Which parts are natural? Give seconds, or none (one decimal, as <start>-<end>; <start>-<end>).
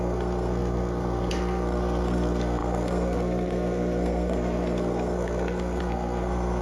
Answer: none